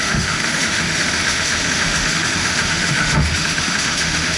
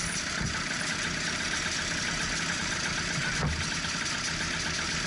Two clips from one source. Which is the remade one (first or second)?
first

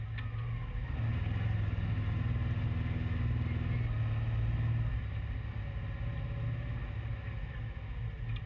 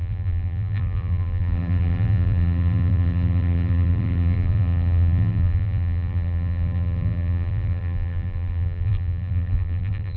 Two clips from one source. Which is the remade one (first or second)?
second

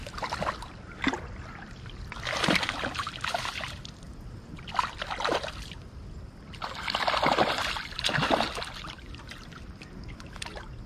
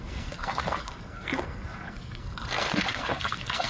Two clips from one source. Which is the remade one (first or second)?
second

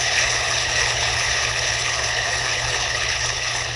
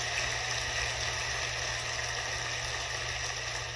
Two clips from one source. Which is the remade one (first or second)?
first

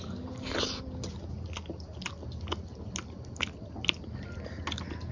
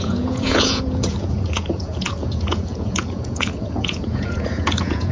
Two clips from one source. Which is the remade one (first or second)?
second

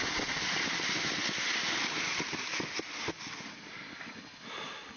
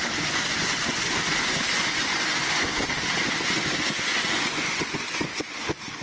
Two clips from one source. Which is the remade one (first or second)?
second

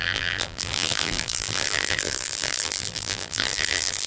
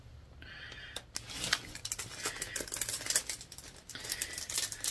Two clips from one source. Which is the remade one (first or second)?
first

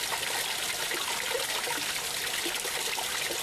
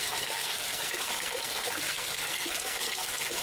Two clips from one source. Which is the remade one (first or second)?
second